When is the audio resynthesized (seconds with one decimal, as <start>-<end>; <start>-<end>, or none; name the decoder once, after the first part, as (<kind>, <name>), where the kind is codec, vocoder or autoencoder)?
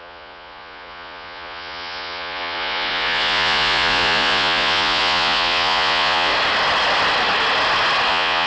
0.0-6.3 (vocoder, Vocos); 8.1-8.5